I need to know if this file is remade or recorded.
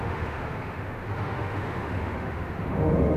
remade